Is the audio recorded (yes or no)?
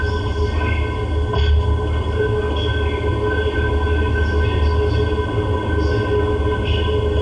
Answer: yes